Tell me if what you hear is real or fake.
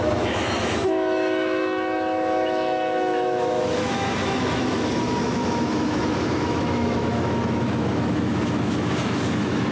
fake